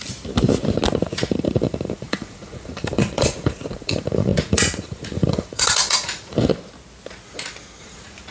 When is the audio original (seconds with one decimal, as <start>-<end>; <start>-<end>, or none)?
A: 0.0-1.0; 6.5-7.8